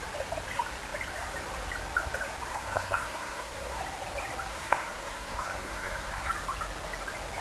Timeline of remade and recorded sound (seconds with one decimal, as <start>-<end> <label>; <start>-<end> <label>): 0.0-2.5 recorded; 2.5-3.8 remade; 3.8-4.5 recorded; 4.5-6.3 remade; 6.3-7.4 recorded